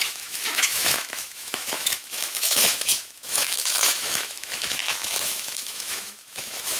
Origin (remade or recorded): remade